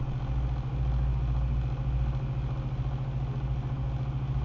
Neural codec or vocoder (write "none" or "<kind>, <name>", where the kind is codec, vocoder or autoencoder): none